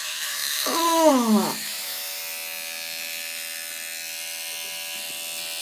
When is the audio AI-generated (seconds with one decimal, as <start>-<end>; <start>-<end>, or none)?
0.0-2.2